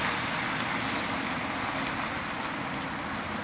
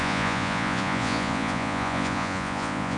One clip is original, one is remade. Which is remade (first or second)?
second